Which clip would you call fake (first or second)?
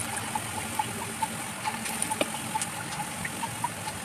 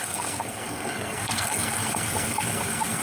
second